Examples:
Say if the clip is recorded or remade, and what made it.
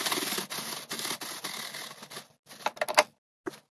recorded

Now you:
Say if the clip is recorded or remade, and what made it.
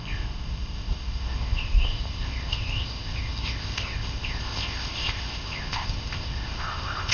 remade, codec, ZipCodec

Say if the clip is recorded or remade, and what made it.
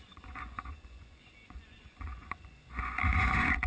remade, vocoder, Vocos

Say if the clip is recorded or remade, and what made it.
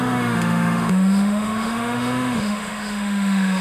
remade, autoencoder, DAC-VAE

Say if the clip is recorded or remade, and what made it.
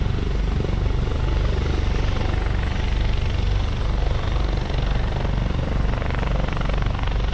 recorded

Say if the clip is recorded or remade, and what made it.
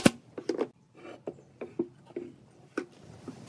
recorded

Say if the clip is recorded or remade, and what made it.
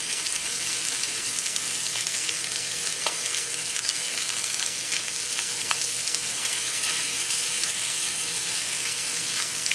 remade, codec, SNAC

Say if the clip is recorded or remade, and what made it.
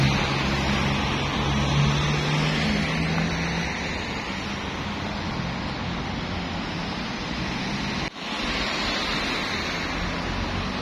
recorded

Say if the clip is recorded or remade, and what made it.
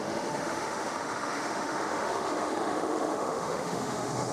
remade, autoencoder, DAC-VAE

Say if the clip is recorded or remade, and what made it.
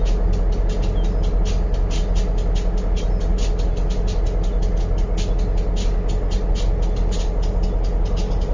recorded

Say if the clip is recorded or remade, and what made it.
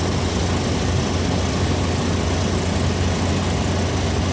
recorded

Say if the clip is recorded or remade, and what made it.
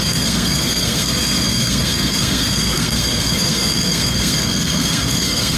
remade, codec, SNAC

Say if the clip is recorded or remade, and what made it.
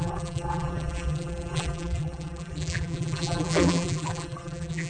remade, vocoder, BigVGAN v2